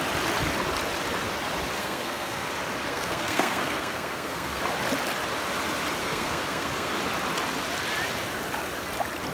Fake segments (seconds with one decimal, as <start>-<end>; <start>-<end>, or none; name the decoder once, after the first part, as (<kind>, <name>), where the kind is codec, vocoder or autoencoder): 1.8-2.5 (codec, SNAC); 2.9-4.6; 6.0-6.9